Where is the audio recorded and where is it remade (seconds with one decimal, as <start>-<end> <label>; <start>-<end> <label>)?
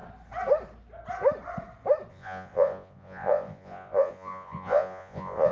0.0-2.1 recorded; 2.1-5.5 remade